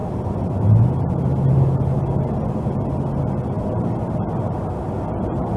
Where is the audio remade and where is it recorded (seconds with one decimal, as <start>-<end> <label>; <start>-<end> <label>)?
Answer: 0.0-5.6 recorded